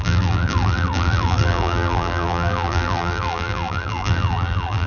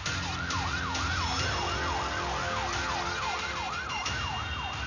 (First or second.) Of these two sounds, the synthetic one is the first